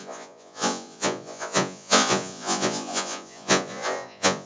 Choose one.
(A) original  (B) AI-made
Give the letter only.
B